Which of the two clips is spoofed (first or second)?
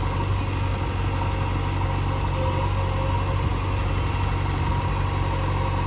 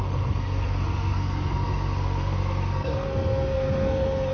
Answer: second